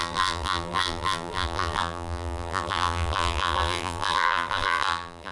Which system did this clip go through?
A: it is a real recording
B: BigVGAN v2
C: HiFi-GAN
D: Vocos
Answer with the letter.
B